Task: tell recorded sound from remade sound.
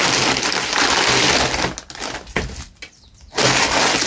recorded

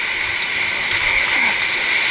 recorded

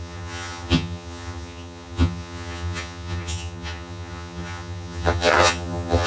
remade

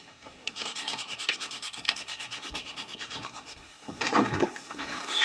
remade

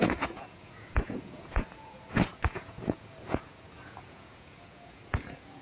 remade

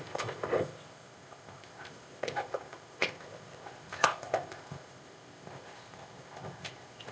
remade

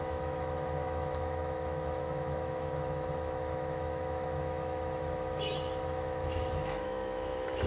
remade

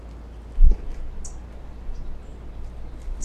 recorded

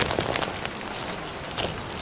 recorded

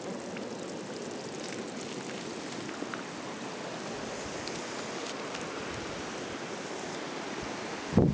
recorded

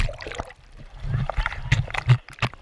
recorded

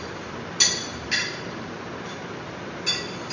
recorded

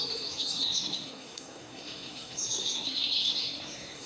remade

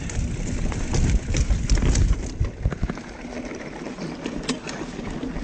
recorded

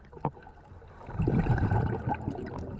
recorded